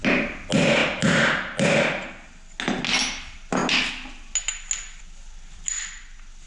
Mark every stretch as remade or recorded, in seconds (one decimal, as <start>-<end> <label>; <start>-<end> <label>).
0.0-6.5 recorded